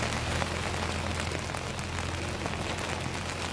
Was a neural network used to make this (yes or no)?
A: no